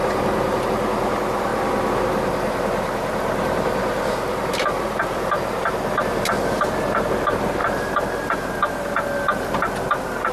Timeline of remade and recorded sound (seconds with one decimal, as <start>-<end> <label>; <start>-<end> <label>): 0.0-10.3 recorded